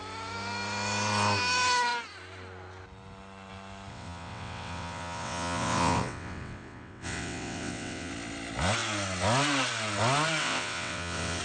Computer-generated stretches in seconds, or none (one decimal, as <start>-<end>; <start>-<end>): 3.9-8.1; 10.4-11.4